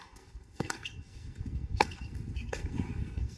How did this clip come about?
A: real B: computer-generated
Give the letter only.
B